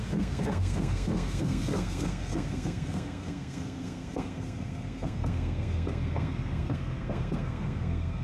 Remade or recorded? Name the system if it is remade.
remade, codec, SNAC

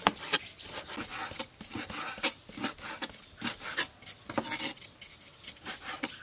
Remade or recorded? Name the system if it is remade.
recorded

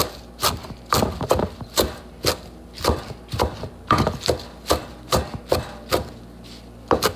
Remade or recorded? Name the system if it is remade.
recorded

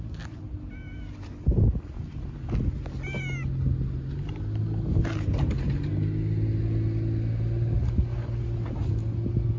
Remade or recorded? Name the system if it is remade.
recorded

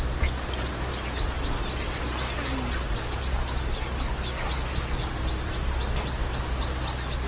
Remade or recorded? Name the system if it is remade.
recorded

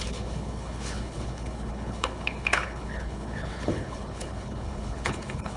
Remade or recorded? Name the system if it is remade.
remade, codec, HILCodec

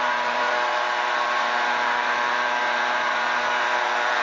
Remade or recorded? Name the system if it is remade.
remade, vocoder, BigVGAN v2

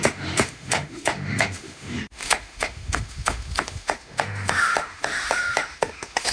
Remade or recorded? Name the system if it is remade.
remade, autoencoder, DAC-VAE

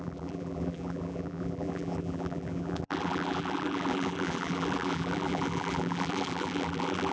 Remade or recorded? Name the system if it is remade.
remade, vocoder, BigVGAN v2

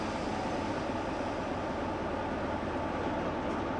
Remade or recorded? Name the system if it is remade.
recorded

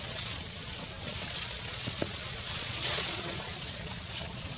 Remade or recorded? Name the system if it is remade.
remade, vocoder, Vocos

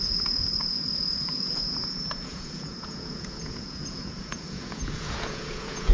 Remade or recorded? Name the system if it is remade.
remade, vocoder, Vocos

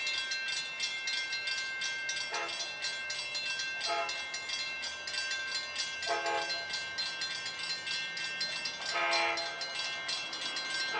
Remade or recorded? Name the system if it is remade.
recorded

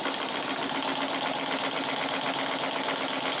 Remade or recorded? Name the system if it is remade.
recorded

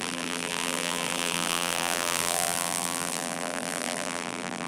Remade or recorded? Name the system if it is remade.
remade, vocoder, BigVGAN v2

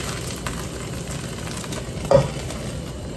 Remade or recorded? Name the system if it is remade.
recorded